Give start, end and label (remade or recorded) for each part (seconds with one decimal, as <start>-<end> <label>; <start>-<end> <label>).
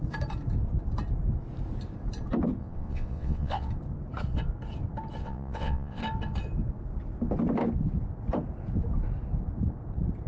0.0-2.6 recorded; 2.6-3.7 remade; 3.7-5.2 recorded; 5.2-6.0 remade; 6.0-10.3 recorded